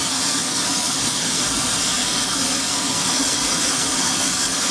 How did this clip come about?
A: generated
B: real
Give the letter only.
A